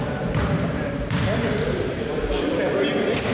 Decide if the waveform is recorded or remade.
recorded